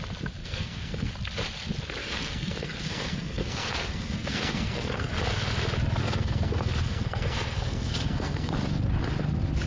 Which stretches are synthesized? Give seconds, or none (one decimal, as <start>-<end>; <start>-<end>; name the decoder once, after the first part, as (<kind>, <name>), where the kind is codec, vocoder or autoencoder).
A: 0.4-1.1 (codec, SNAC); 2.0-5.1; 6.0-8.5